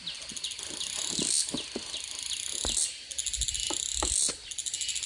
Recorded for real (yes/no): yes